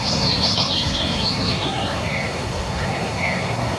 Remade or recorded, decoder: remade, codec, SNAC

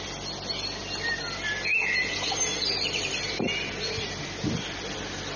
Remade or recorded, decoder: recorded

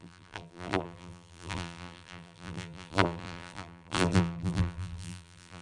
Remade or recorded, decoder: remade, vocoder, BigVGAN v2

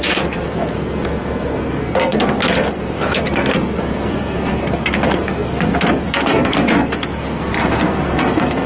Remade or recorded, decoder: remade, codec, SNAC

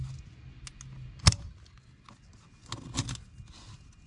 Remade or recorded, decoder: recorded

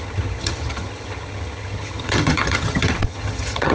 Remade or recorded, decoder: remade, vocoder, HiFi-GAN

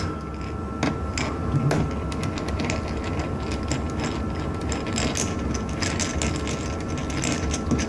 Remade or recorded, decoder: recorded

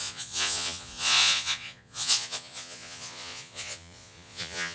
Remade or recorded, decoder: remade, vocoder, Vocos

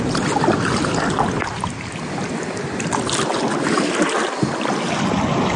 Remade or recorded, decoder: recorded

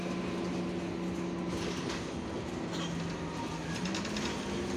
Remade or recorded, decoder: recorded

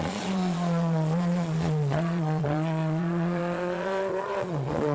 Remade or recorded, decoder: remade, vocoder, Vocos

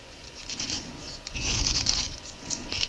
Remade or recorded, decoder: remade, vocoder, Vocos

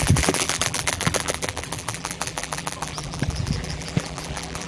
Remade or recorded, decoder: remade, vocoder, BigVGAN v2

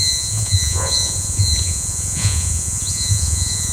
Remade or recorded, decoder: remade, vocoder, Vocos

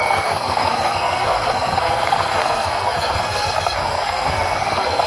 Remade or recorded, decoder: remade, codec, SNAC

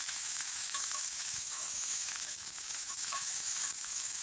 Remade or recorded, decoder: remade, autoencoder, DAC-VAE